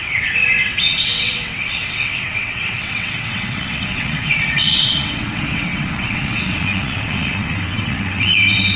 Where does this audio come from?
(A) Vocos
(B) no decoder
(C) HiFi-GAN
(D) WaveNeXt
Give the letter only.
D